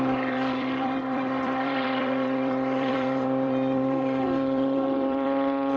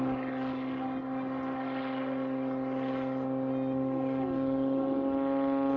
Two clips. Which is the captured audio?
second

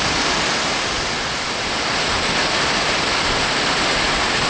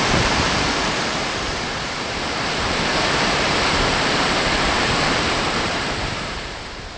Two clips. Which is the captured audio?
first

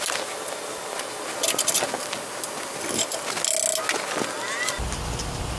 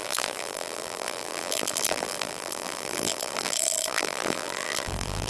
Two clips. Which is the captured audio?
first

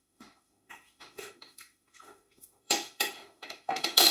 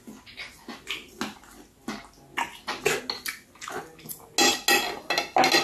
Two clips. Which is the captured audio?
second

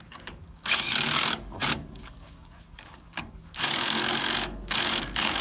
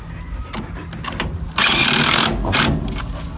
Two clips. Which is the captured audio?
second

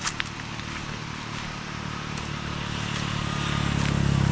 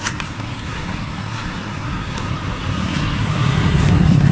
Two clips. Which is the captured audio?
first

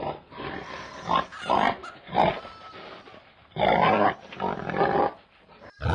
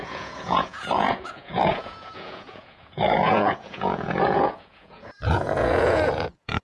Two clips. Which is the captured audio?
first